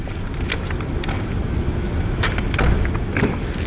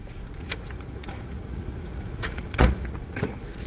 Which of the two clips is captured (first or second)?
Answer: first